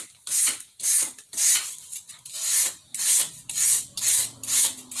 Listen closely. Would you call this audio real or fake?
fake